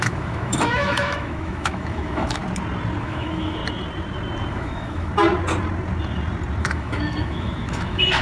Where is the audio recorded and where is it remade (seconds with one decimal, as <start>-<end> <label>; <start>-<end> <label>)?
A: 0.0-2.4 remade; 2.4-3.0 recorded; 3.0-3.6 remade; 3.6-4.5 recorded; 4.5-5.1 remade; 5.1-6.6 recorded; 6.6-8.2 remade